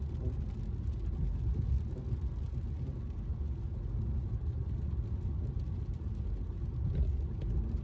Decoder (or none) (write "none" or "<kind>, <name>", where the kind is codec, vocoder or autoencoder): none